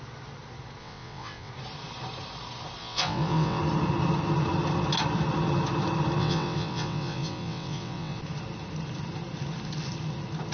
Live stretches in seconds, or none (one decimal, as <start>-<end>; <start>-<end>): 0.0-0.8; 1.5-2.8; 3.6-6.2; 8.2-10.5